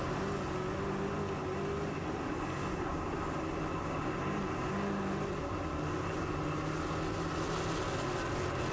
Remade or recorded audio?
recorded